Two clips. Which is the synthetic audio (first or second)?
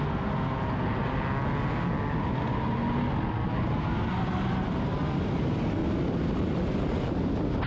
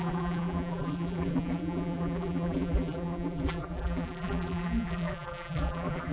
second